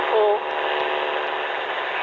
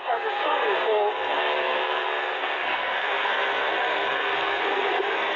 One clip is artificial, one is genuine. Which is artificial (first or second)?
second